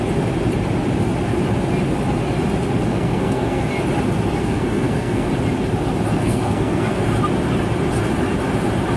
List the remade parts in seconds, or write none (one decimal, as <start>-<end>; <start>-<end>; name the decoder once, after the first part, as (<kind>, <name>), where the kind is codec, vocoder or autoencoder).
2.9-3.7 (codec, SNAC); 4.4-5.3; 6.1-7.0